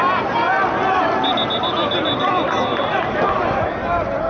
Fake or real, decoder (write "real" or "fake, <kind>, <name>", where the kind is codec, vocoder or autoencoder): real